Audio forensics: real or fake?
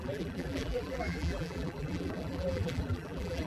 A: fake